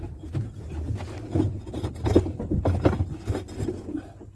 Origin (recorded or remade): recorded